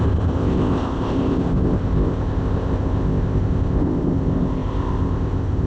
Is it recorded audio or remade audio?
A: remade